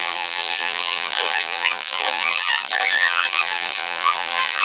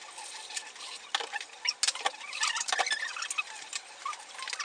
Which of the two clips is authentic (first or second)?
second